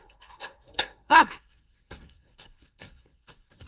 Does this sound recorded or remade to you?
remade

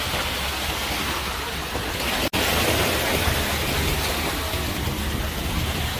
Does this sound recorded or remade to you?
recorded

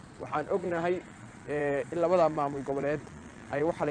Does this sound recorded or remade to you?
remade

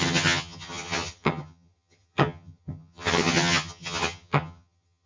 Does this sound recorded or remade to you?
remade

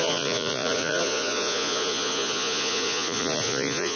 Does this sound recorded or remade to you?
remade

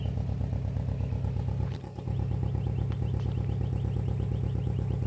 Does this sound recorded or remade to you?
recorded